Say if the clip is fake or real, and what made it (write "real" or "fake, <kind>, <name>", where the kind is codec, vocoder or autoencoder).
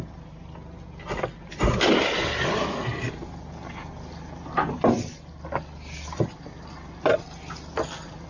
real